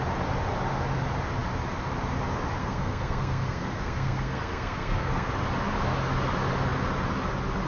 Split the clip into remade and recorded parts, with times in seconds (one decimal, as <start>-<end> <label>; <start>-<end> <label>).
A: 0.0-2.6 recorded; 2.6-5.3 remade; 5.3-7.7 recorded

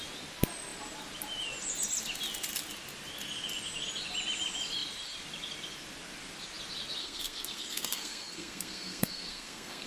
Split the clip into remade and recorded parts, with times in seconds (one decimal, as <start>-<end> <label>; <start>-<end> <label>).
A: 0.0-7.0 recorded; 7.0-9.9 remade